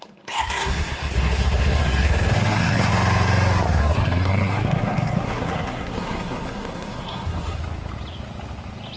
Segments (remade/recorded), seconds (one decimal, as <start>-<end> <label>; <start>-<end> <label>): 0.0-2.9 remade; 2.9-3.8 recorded; 3.8-7.6 remade; 7.6-9.0 recorded